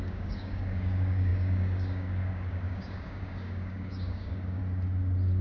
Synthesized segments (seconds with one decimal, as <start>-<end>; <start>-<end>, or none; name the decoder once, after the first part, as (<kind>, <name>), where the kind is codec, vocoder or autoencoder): 0.0-4.6 (codec, DAC)